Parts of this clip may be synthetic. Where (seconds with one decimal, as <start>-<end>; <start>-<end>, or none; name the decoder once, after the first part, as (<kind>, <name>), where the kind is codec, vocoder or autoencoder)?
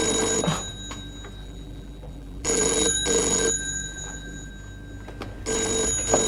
1.4-4.5 (vocoder, BigVGAN v2)